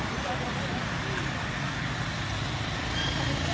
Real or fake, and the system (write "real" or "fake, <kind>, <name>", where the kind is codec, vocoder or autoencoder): real